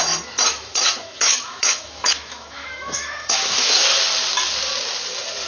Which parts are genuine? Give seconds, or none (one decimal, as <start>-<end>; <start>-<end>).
0.0-0.5; 3.8-5.5